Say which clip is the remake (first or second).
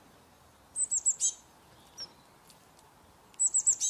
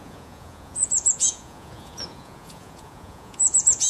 second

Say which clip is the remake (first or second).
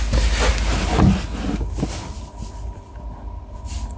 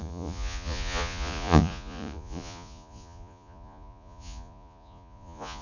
second